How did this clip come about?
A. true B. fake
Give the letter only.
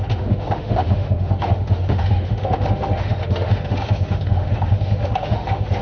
B